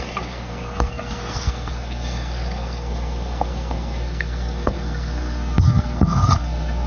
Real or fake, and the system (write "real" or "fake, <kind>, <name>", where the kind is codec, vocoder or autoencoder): fake, codec, SNAC